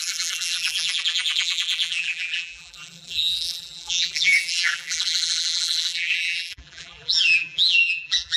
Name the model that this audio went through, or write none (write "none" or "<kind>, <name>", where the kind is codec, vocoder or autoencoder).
vocoder, BigVGAN v2